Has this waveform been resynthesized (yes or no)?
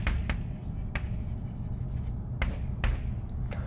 no